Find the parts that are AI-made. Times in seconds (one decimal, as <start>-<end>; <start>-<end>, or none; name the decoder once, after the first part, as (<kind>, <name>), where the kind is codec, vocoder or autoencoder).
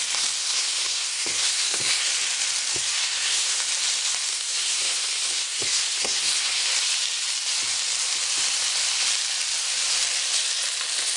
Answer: 0.4-2.1 (codec, SNAC); 2.7-3.6; 4.3-6.7